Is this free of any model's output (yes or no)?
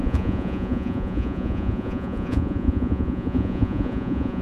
no